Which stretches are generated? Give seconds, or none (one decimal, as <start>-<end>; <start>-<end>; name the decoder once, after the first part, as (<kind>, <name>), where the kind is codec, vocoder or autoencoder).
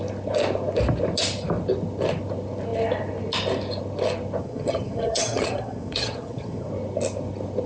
4.4-6.7 (vocoder, HiFi-GAN)